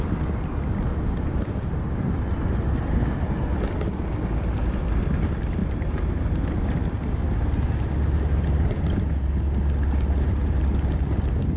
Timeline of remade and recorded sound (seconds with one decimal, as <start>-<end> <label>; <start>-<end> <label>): 0.0-11.6 recorded